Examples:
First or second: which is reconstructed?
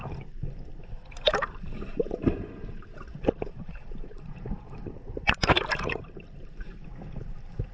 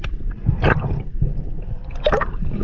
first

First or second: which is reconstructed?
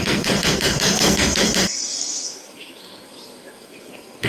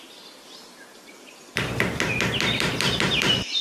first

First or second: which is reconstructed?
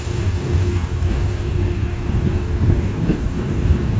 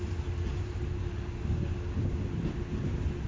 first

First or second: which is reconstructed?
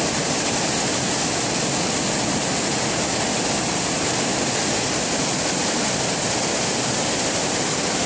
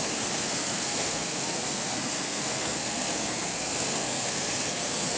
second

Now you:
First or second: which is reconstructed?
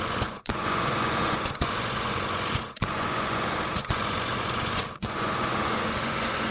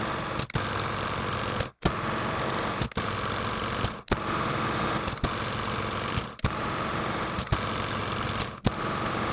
first